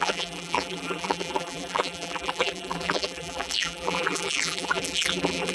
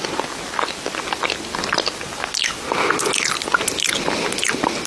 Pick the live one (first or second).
second